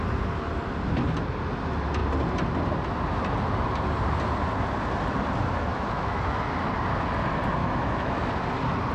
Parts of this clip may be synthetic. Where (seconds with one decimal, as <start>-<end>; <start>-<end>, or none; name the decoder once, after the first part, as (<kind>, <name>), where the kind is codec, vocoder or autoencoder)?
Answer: 5.7-6.4 (autoencoder, DAC-VAE); 7.6-8.3